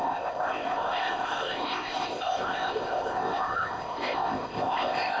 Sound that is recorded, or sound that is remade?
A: remade